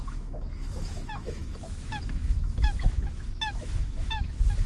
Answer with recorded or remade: remade